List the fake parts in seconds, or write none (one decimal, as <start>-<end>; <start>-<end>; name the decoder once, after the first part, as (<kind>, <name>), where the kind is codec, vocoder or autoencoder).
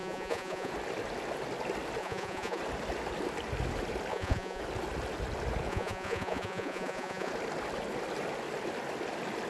0.0-0.7 (vocoder, Vocos); 2.0-2.6; 4.1-4.6; 5.7-7.3